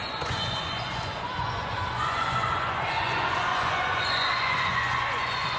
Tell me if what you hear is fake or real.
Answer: fake